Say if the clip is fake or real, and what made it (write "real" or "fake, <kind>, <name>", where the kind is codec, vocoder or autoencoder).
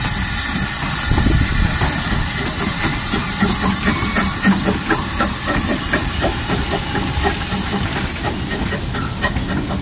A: real